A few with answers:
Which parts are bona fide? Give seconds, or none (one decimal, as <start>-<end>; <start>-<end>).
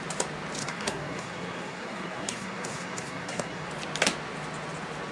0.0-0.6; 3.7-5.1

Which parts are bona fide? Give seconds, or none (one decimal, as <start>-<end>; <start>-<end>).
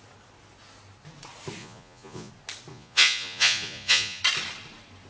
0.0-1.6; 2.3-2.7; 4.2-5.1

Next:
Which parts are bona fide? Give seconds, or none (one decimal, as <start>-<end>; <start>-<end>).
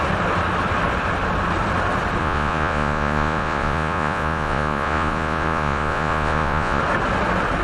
0.0-2.2; 6.8-7.6